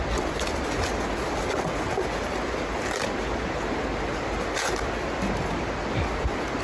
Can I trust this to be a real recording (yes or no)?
yes